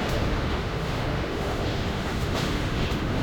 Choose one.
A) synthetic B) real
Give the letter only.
A